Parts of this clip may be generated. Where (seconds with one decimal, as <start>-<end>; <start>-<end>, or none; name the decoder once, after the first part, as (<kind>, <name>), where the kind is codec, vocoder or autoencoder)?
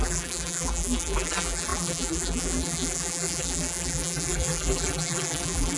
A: 0.0-5.8 (vocoder, BigVGAN v2)